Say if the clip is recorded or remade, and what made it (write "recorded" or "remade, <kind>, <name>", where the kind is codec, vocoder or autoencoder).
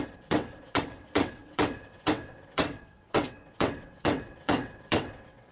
remade, vocoder, WaveNeXt